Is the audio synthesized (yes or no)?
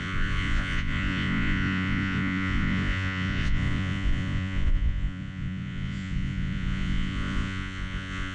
yes